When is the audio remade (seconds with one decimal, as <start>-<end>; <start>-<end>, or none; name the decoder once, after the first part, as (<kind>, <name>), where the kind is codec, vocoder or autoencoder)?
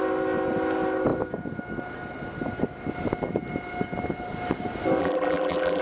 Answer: 5.0-5.8 (vocoder, BigVGAN v2)